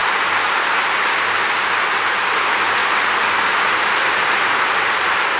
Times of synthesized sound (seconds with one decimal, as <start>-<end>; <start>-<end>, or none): 2.8-4.8